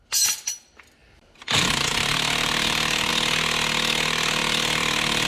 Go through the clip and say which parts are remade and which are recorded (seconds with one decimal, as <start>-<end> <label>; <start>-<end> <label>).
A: 0.0-1.0 recorded; 1.0-3.1 remade; 3.1-4.4 recorded; 4.4-5.3 remade